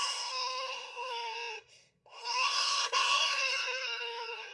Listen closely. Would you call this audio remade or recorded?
remade